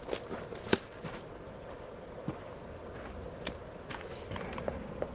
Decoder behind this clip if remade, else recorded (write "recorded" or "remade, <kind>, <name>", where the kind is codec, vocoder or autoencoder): recorded